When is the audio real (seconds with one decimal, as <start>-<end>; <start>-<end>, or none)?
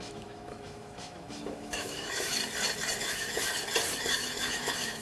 2.4-3.0; 3.5-4.0